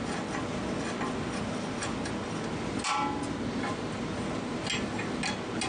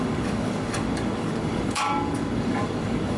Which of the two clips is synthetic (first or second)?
second